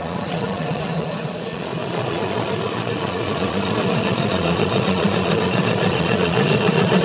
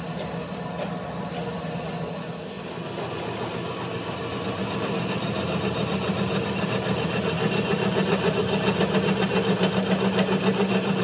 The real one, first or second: second